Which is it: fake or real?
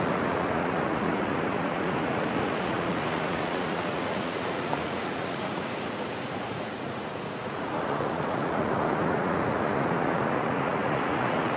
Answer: fake